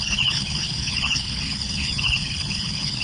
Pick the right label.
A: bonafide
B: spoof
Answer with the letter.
B